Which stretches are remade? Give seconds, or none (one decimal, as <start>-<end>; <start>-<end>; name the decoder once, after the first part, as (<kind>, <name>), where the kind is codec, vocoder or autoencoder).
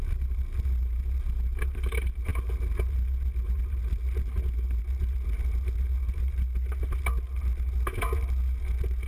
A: none